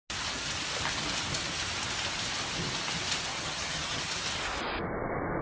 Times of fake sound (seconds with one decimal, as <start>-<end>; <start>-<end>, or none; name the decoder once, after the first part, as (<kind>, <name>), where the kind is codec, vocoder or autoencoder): 3.3-4.0 (vocoder, HiFi-GAN)